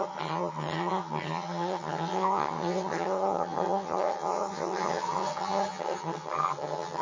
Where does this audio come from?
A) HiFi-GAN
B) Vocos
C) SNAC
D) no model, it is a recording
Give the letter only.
A